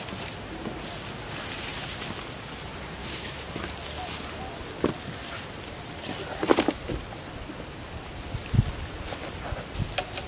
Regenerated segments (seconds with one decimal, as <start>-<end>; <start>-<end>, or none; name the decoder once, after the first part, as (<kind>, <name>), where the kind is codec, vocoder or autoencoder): 3.0-3.5 (autoencoder, DAC-VAE)